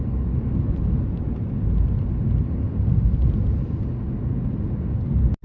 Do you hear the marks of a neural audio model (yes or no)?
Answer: no